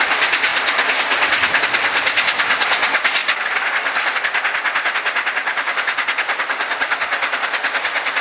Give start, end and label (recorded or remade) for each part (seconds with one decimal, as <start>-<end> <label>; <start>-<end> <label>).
0.0-8.2 recorded